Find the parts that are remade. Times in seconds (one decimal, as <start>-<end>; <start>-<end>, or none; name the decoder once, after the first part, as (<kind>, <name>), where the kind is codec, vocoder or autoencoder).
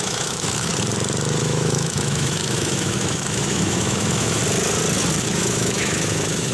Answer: 0.0-0.7 (autoencoder, DAC-VAE); 1.4-4.4; 5.2-6.5